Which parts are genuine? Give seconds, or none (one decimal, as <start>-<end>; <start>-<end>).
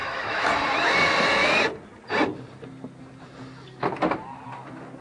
0.5-5.0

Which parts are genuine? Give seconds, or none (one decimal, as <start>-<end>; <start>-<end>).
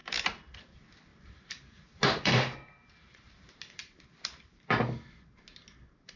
0.5-1.1; 4.8-6.2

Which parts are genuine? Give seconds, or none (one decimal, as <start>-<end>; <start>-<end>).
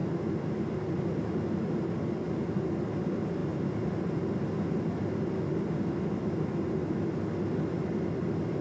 0.0-8.6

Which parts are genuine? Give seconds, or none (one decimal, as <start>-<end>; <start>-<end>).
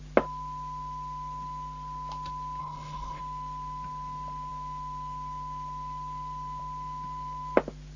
0.0-2.6; 3.2-8.0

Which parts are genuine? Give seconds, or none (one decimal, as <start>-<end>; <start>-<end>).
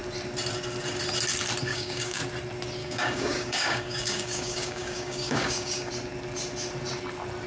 0.0-1.7; 2.2-2.8; 5.9-7.5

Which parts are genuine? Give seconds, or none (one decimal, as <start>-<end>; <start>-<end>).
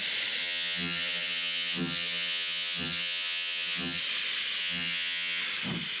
0.0-0.4; 4.0-4.6; 5.4-6.0